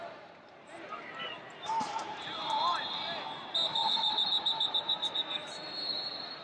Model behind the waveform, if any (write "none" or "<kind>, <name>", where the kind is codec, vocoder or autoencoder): vocoder, BigVGAN v2